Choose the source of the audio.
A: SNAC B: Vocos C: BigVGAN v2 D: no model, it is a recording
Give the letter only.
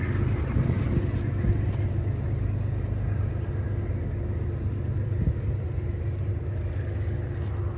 D